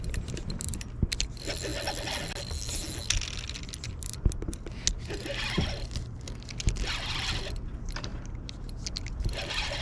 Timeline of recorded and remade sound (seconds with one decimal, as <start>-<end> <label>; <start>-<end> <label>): 0.0-9.8 recorded